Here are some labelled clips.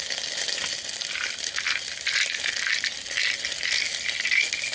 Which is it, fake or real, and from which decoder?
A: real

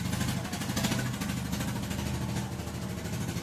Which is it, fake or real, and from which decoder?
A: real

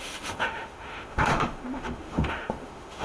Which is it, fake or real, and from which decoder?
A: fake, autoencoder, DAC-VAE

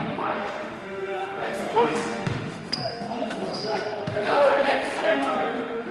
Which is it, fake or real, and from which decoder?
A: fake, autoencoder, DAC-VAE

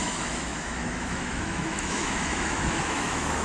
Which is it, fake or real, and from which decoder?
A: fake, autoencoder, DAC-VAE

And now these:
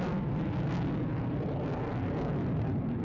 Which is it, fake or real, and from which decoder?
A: real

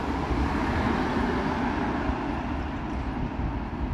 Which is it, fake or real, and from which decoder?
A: real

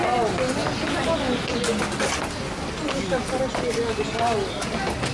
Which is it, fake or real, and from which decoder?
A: real